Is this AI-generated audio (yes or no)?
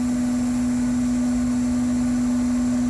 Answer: no